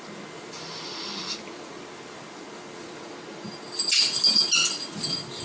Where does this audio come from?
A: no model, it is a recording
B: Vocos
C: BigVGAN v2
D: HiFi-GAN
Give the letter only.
A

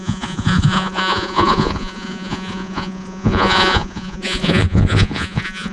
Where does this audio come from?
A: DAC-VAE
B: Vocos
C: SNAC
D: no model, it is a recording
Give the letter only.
B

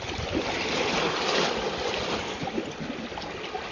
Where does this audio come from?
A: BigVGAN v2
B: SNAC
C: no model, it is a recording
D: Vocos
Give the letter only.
C